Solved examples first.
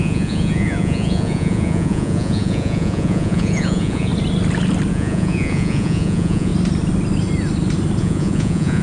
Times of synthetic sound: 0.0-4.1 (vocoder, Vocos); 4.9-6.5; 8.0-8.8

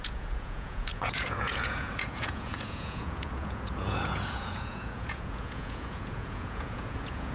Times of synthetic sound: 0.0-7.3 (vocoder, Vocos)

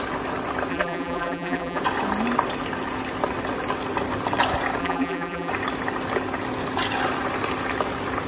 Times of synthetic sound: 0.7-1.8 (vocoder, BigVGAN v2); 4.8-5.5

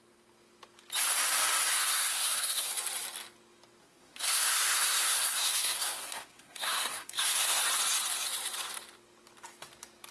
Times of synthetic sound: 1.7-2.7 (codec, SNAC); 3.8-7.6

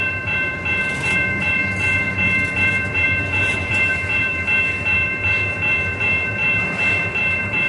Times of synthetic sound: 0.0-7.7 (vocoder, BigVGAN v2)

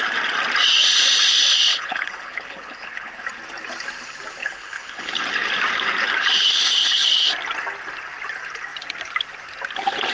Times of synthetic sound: 1.7-3.2 (codec, HILCodec); 4.4-5.1